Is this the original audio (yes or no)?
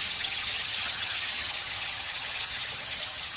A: no